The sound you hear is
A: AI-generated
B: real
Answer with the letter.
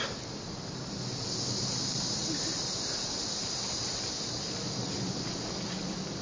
B